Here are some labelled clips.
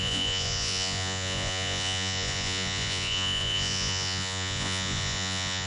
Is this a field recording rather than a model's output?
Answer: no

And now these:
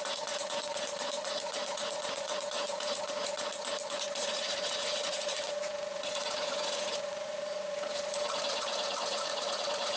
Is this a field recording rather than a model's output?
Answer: no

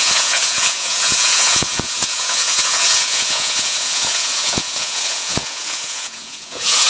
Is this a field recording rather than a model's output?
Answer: no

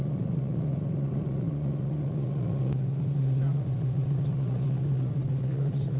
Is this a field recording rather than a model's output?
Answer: no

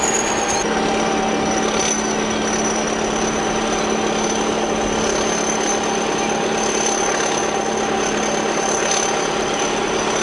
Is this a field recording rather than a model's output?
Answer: yes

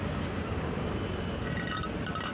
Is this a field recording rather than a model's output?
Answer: yes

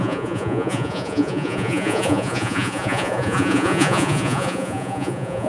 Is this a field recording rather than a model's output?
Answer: no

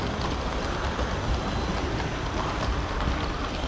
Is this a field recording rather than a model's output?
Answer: yes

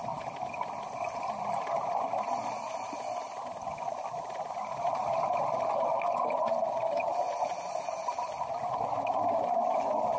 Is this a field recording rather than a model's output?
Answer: yes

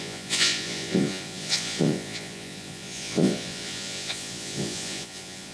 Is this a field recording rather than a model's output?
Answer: no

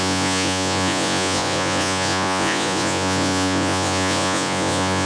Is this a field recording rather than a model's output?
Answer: no